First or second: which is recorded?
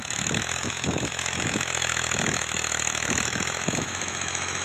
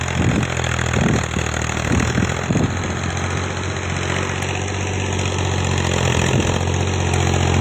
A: second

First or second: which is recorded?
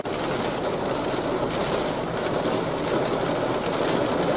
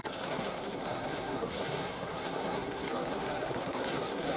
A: first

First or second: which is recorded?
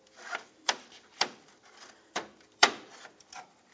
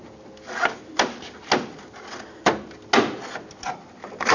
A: second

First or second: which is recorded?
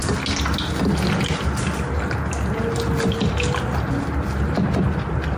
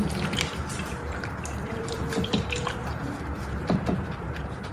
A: first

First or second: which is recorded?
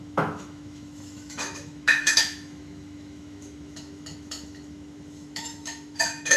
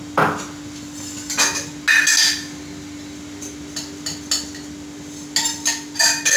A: second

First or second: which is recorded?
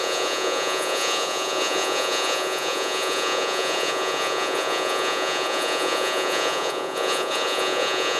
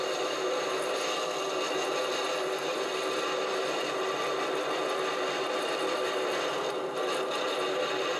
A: second